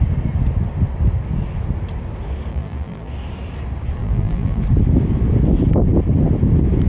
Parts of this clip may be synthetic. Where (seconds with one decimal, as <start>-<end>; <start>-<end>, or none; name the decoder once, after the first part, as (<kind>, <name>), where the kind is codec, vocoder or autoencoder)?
2.5-3.1 (vocoder, BigVGAN v2); 4.0-4.6